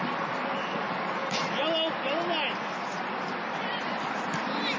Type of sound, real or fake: real